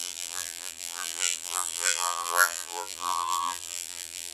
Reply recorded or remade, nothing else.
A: remade